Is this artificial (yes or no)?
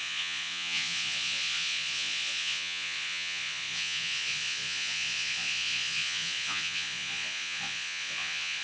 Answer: yes